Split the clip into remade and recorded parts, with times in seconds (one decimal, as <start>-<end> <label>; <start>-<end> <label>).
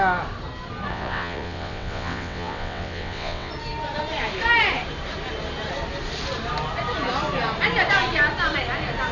0.0-0.9 recorded; 0.9-3.5 remade; 3.5-9.1 recorded